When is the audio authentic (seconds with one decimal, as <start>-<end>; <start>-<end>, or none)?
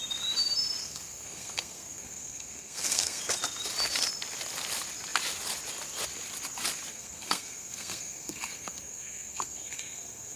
0.0-0.8; 3.2-6.9